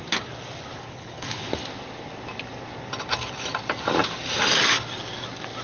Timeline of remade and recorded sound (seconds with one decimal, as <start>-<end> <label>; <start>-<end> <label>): 0.0-0.7 recorded; 0.7-1.5 remade; 1.5-5.6 recorded